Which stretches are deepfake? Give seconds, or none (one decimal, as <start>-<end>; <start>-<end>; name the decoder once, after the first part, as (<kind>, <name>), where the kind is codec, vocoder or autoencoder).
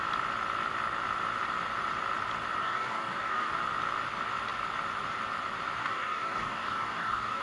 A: 2.6-3.5 (codec, DAC); 5.8-7.4